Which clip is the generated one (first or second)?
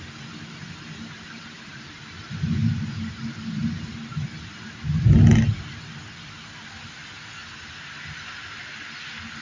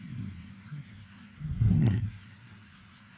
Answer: second